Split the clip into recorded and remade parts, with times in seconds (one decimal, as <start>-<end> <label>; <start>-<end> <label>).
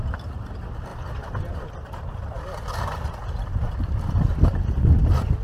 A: 0.0-5.4 recorded